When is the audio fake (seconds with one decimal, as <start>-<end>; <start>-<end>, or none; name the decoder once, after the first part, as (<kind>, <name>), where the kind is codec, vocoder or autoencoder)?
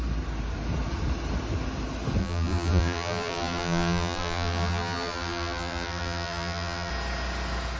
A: 2.2-6.9 (vocoder, BigVGAN v2)